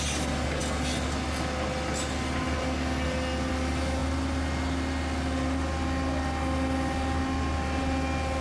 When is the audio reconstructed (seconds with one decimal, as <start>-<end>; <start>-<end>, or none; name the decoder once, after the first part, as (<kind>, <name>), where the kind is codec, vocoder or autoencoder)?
none